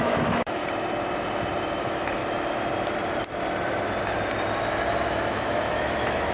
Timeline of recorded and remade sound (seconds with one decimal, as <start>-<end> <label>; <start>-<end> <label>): 0.0-0.6 remade; 0.6-1.8 recorded; 1.8-2.2 remade; 2.2-5.3 recorded; 5.3-6.3 remade